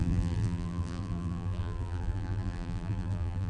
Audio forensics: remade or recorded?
remade